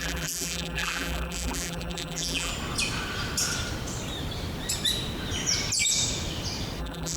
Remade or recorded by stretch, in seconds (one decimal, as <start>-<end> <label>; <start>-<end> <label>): 0.0-2.5 remade; 2.5-6.8 recorded; 6.8-7.2 remade